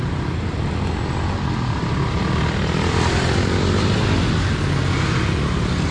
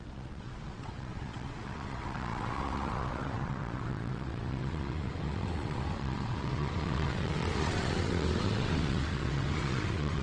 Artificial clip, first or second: second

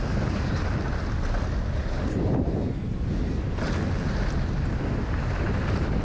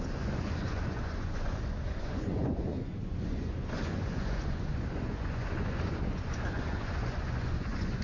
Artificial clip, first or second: second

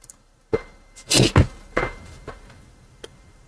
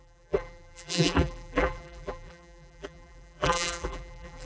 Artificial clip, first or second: second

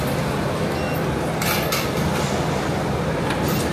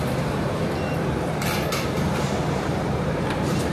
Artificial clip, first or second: second